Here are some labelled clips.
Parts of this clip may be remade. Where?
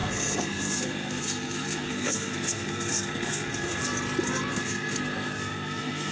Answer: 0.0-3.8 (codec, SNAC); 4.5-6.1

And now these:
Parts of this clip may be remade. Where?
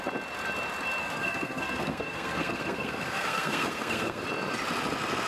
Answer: 1.0-4.2 (codec, SNAC)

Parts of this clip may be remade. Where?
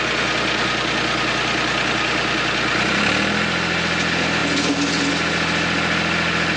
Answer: none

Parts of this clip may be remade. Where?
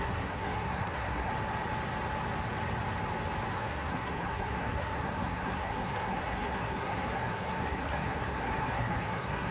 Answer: 0.0-1.3 (codec, SNAC); 3.5-9.5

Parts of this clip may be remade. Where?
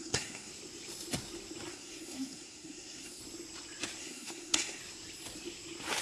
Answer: 0.0-0.5 (codec, SNAC); 1.7-3.2; 4.0-4.8